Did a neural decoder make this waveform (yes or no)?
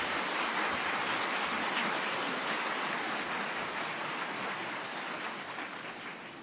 no